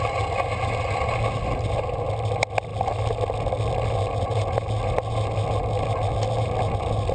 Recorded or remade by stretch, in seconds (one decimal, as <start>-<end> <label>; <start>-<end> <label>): 0.0-7.1 recorded